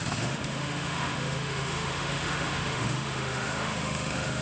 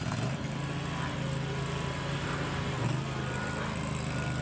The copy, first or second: first